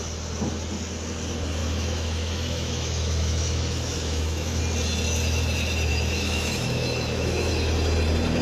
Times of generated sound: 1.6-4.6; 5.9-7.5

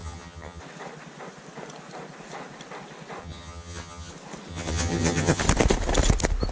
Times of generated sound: 0.0-0.6; 3.2-4.1; 4.5-5.4

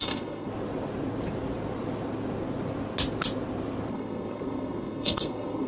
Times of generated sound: 0.0-0.5; 3.9-5.7

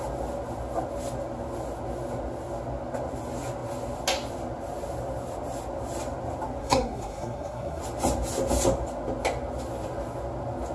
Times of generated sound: 6.6-7.8

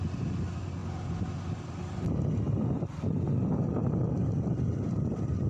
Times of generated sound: none

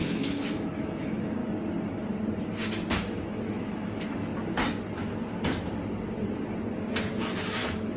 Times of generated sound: 0.0-1.4; 2.9-4.3; 7.1-8.0